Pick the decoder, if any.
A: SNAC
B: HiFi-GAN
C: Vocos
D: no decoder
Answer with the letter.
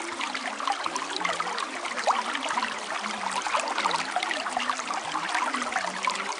D